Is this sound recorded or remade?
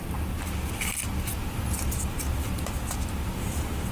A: recorded